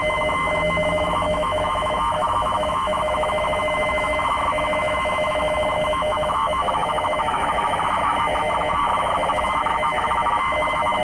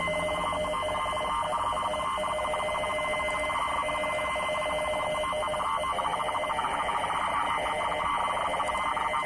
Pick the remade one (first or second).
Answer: first